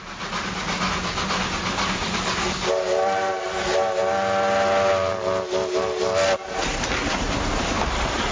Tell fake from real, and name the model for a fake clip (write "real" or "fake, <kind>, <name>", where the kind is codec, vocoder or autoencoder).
real